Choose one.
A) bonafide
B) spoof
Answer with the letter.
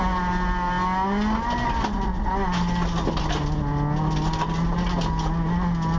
A